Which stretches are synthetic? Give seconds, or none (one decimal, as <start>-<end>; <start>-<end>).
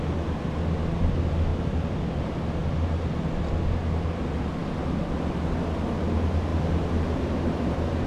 1.5-2.2; 4.6-5.2; 6.5-7.2